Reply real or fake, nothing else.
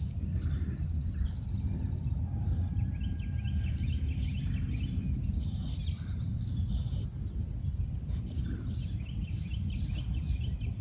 real